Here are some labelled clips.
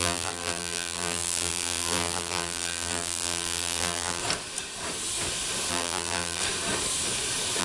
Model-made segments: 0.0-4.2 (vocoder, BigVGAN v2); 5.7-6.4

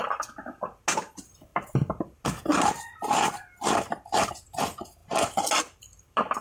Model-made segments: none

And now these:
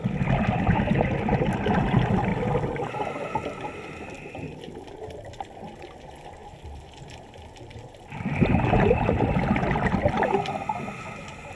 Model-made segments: none

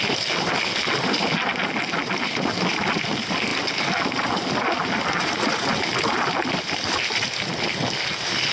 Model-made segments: none